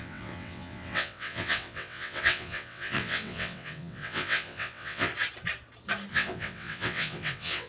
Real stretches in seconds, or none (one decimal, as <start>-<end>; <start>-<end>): 5.1-6.1